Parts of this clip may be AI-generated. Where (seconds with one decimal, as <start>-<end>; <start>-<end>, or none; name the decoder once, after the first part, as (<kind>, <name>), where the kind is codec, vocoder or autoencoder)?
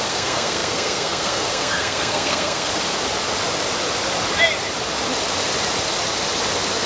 0.0-2.7 (codec, SNAC)